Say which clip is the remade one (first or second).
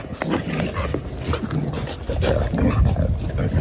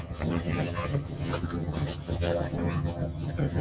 second